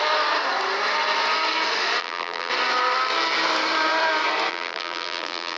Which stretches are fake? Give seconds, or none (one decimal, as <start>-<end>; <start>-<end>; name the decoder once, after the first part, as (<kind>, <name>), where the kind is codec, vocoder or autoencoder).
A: 2.0-2.5 (vocoder, BigVGAN v2); 4.5-5.6